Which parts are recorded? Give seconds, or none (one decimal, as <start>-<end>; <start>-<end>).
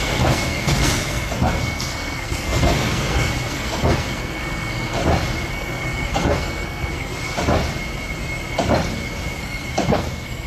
5.0-5.5; 7.1-9.4